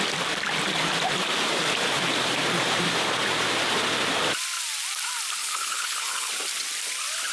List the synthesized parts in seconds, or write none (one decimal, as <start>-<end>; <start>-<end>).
5.4-6.3